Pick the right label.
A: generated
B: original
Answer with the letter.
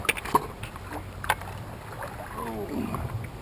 B